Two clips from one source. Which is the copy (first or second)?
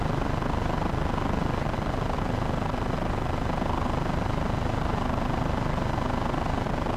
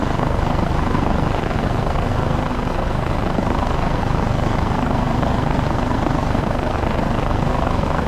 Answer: second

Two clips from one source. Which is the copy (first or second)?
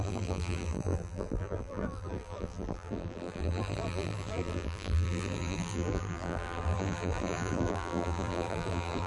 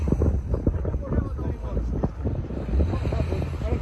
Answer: first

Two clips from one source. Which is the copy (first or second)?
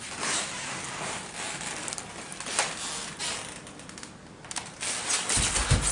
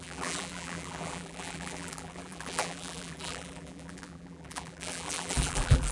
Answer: second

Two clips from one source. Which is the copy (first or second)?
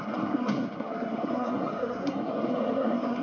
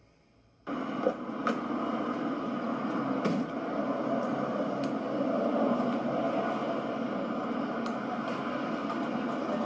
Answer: first